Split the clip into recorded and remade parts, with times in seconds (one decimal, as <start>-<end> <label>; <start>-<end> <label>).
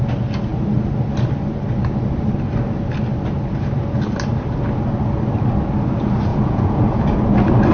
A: 0.0-6.3 recorded; 6.3-7.0 remade; 7.0-7.7 recorded